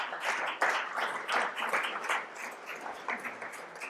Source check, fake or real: real